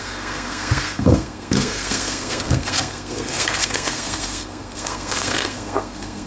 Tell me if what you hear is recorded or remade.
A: remade